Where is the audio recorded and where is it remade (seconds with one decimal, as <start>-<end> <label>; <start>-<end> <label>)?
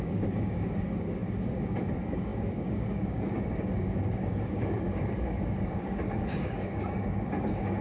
0.0-7.8 remade